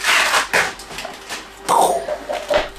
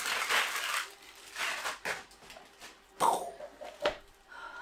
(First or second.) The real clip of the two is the first